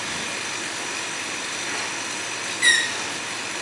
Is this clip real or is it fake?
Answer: real